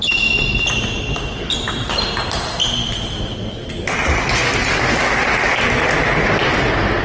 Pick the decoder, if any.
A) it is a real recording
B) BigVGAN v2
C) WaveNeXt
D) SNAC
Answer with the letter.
A